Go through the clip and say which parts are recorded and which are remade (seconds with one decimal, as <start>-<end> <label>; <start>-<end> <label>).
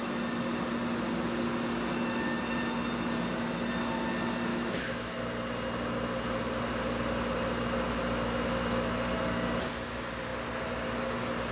0.0-4.5 recorded; 4.5-5.2 remade; 5.2-11.5 recorded